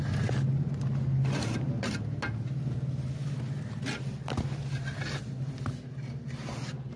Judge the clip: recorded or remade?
recorded